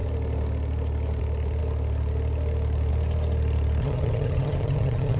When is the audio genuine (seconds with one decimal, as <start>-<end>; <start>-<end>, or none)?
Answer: 0.0-3.8